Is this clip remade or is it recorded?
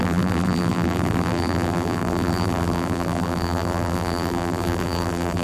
remade